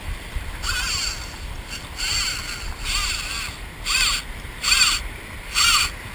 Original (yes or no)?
no